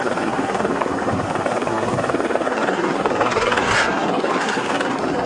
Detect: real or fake fake